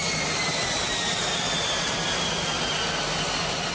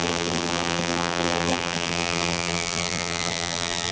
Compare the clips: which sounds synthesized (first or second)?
second